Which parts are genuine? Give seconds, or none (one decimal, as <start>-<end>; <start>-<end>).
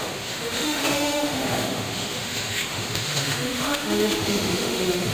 none